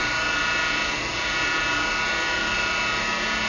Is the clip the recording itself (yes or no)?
yes